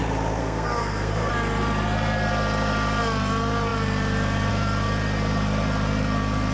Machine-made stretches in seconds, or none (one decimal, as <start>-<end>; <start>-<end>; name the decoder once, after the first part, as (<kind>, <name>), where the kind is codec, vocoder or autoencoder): 0.4-1.3 (codec, SNAC)